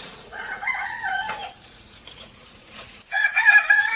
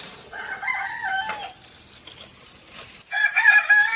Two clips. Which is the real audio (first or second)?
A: second